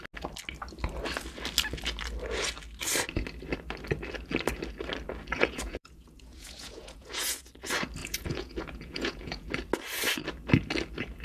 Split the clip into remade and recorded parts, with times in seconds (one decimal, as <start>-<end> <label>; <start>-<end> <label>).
0.0-5.3 recorded; 5.3-7.5 remade; 7.5-8.0 recorded; 8.0-9.5 remade; 9.5-11.2 recorded